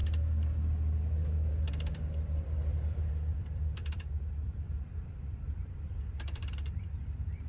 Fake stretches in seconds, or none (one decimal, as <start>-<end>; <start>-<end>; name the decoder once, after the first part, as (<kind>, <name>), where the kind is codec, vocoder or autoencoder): 1.7-7.5 (vocoder, BigVGAN v2)

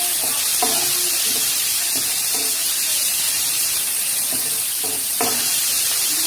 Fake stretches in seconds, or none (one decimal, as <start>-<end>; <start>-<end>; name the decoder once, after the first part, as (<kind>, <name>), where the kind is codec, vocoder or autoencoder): 0.0-0.5 (vocoder, BigVGAN v2); 1.4-6.3

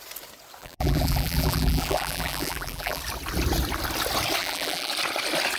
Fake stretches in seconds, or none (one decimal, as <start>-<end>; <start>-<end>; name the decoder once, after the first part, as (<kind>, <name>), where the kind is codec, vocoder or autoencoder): 0.6-3.0 (vocoder, BigVGAN v2); 4.4-4.9

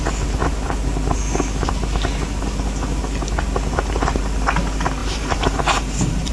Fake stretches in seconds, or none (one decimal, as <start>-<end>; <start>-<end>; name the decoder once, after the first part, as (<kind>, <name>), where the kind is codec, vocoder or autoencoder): 5.0-6.3 (vocoder, BigVGAN v2)

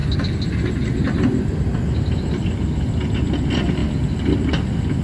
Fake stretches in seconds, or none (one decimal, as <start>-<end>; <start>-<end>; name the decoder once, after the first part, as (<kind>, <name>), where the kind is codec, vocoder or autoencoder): none

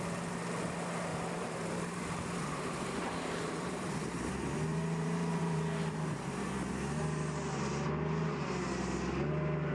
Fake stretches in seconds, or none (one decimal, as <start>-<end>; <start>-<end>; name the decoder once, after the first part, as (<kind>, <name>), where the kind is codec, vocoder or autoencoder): 1.1-3.9 (vocoder, BigVGAN v2); 4.7-6.5